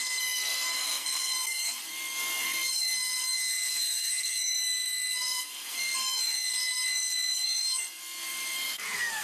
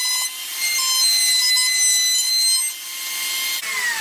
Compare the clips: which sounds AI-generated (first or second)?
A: first